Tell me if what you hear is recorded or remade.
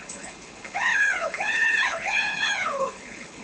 remade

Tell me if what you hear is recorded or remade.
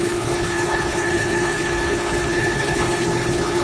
remade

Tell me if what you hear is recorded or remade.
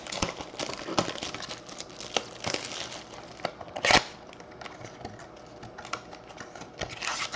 recorded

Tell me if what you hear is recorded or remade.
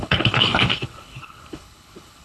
remade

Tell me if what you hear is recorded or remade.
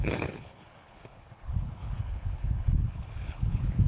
remade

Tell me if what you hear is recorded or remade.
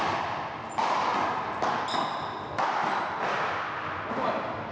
recorded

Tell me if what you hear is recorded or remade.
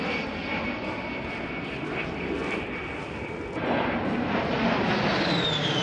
recorded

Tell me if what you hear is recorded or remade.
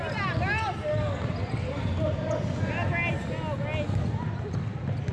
recorded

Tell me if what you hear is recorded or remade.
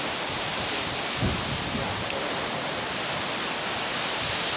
recorded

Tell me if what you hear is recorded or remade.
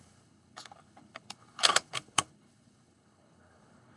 remade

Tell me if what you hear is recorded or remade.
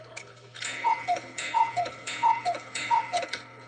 remade